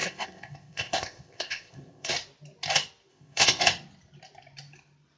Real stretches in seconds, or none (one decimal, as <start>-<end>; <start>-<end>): 2.1-3.1; 3.6-5.2